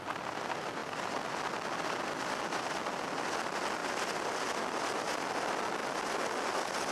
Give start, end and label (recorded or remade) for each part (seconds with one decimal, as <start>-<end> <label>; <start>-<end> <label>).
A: 0.0-6.9 recorded